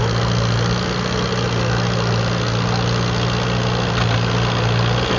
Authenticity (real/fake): real